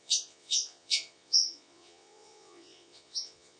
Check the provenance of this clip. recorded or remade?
remade